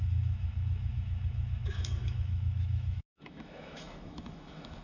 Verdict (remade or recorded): remade